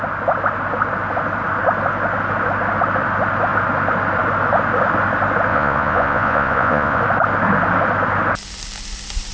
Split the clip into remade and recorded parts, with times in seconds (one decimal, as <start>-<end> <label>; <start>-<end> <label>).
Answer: 0.0-5.5 recorded; 5.5-7.0 remade; 7.0-9.3 recorded